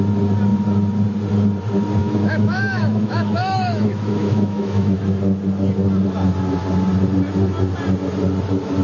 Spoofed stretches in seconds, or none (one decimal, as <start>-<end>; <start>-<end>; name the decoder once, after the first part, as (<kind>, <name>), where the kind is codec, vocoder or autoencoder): 2.0-5.0 (autoencoder, DAC-VAE)